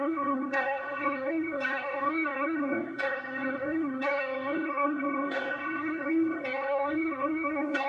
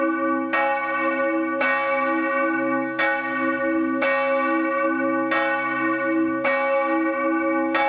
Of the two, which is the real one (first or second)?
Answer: second